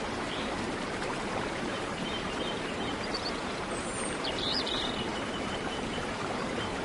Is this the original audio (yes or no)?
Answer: no